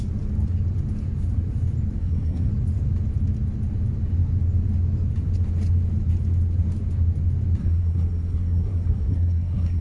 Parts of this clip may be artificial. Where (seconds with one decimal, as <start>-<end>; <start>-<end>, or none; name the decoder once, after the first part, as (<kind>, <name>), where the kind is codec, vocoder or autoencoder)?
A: 2.0-2.5 (codec, SNAC); 7.6-9.8

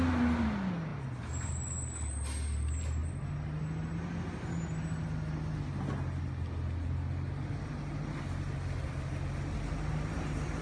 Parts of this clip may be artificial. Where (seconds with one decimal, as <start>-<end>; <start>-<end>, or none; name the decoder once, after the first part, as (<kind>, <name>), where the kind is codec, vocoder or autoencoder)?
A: none

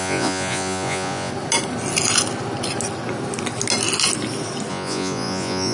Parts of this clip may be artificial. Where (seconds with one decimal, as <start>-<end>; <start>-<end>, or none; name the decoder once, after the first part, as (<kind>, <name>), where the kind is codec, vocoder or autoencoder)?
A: 0.0-1.3 (vocoder, Vocos); 4.7-5.7

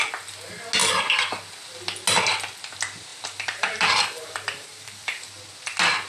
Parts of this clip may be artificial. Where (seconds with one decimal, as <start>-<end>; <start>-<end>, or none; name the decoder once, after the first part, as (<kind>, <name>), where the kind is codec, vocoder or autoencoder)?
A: 3.1-5.3 (vocoder, BigVGAN v2)

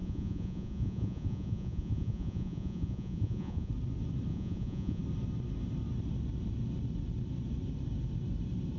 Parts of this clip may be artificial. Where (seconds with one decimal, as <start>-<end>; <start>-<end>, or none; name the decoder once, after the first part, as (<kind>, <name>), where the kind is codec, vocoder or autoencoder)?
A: 0.0-3.7 (vocoder, Vocos); 4.3-5.0

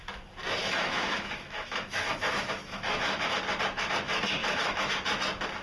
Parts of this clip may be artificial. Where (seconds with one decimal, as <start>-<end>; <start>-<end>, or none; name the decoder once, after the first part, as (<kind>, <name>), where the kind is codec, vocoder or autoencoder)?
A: 0.6-3.4 (autoencoder, DAC-VAE); 4.4-4.9